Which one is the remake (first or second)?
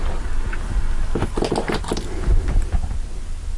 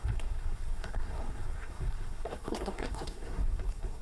second